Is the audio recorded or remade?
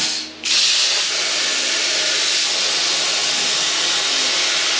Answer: recorded